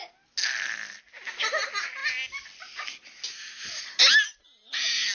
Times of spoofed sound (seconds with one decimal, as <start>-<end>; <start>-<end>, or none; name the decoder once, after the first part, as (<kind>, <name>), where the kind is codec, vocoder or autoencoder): none